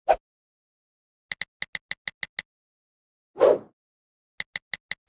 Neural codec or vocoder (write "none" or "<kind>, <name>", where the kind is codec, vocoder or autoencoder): none